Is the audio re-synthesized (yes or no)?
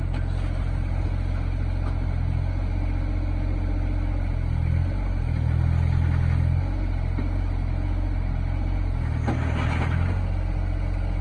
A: no